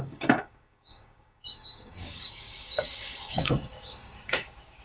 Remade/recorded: remade